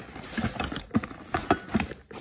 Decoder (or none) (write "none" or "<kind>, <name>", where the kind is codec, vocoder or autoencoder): none